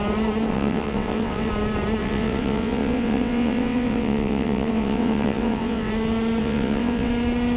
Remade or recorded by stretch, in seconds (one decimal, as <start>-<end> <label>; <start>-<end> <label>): 0.0-0.5 recorded; 0.5-1.5 remade; 1.5-2.0 recorded; 2.0-5.9 remade; 5.9-6.4 recorded; 6.4-7.1 remade; 7.1-7.6 recorded